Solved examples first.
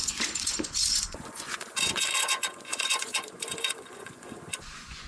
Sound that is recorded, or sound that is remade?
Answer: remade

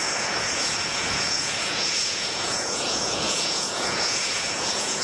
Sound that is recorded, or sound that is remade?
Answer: remade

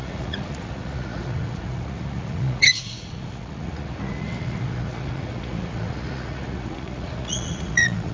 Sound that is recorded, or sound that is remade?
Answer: remade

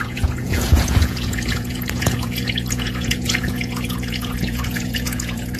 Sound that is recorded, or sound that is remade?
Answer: remade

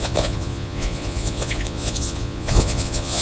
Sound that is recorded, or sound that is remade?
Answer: remade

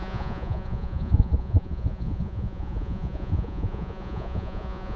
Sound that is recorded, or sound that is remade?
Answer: remade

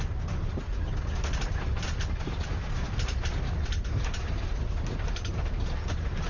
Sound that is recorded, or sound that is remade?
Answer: recorded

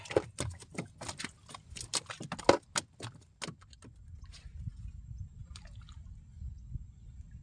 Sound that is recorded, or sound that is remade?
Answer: recorded